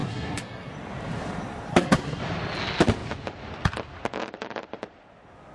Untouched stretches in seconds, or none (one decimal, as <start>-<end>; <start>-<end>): 0.7-1.7; 2.2-5.5